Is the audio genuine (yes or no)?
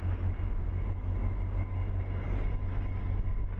yes